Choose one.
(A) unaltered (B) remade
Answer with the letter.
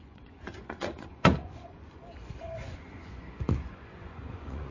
B